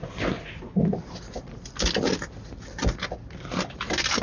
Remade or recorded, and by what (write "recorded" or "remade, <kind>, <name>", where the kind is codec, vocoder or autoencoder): recorded